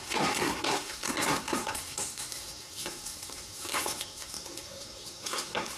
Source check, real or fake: fake